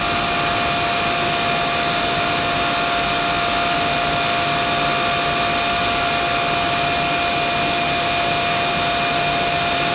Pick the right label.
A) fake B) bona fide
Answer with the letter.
B